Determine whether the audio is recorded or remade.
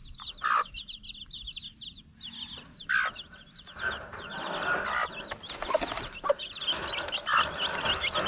recorded